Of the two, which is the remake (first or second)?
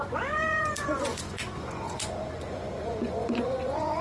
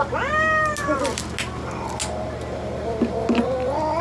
first